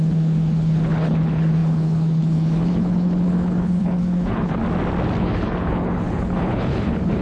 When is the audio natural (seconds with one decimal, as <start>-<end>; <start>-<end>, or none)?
4.6-5.2